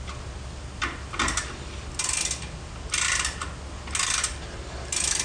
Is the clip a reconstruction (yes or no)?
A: no